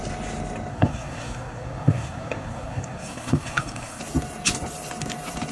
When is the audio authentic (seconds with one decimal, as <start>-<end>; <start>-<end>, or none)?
0.0-0.7; 4.0-5.5